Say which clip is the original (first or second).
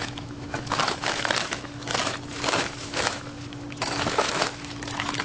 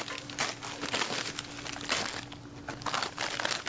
second